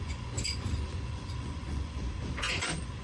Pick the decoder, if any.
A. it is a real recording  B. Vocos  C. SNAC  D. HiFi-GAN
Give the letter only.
B